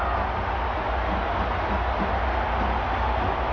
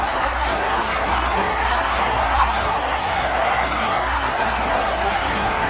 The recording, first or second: first